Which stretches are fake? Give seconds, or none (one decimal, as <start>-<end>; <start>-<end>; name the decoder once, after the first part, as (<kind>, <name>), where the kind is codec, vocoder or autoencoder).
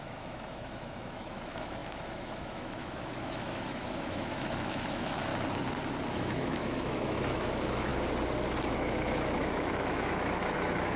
0.0-5.3 (autoencoder, DAC-VAE); 6.1-7.9; 8.7-11.0